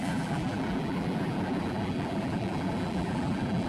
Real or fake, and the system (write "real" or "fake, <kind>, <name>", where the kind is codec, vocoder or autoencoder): fake, vocoder, BigVGAN v2